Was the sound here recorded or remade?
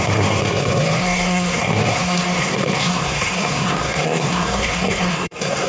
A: remade